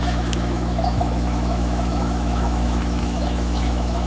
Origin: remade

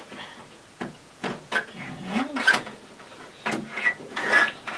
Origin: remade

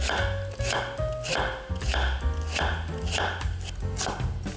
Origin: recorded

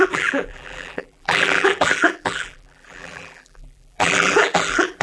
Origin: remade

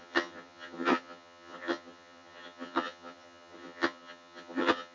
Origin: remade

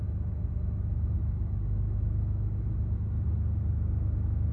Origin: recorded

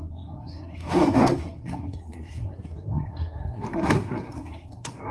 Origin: remade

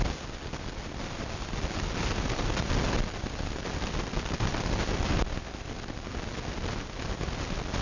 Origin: recorded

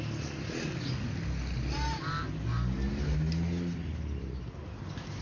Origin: recorded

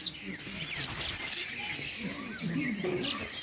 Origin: recorded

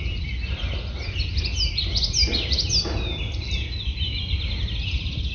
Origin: recorded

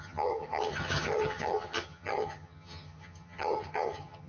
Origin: remade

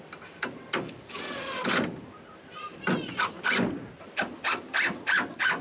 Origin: recorded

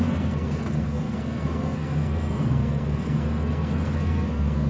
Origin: remade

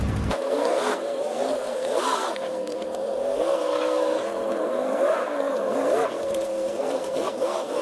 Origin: remade